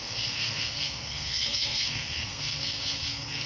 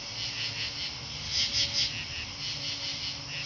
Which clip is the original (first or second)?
second